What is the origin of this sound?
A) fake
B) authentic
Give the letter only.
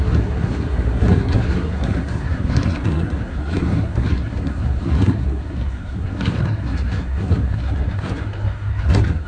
A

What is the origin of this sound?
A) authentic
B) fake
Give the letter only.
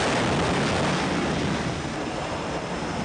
A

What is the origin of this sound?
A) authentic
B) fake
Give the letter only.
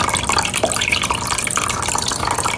A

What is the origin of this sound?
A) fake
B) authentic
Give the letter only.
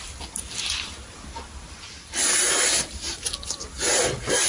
B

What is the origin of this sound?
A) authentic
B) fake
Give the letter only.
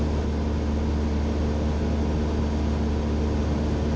A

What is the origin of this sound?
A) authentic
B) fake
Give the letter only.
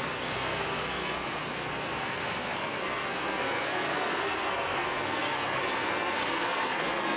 B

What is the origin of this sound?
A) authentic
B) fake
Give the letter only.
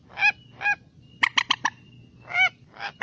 A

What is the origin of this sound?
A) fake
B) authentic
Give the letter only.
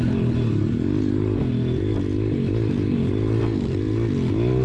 B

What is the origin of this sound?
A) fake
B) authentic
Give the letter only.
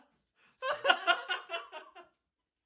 B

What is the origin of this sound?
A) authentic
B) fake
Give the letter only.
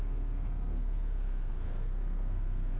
B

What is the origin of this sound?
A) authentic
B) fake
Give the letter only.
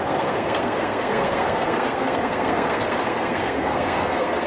B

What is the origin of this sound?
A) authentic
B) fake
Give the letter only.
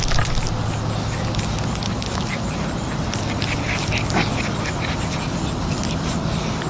A